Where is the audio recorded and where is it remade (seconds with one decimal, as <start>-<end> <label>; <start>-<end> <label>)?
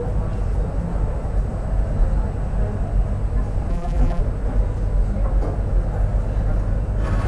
0.0-3.7 recorded; 3.7-4.2 remade; 4.2-7.3 recorded